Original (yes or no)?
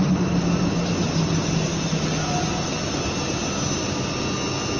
yes